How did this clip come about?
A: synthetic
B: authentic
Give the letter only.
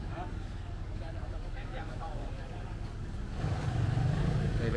A